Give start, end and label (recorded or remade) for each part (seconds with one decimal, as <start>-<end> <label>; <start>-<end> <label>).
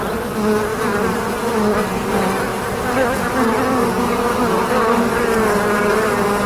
0.0-6.5 recorded